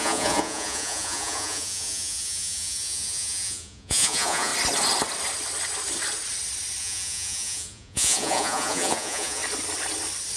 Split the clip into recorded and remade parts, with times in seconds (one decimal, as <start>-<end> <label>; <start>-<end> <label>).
0.0-4.5 remade; 4.5-6.8 recorded; 6.8-9.4 remade; 9.4-10.4 recorded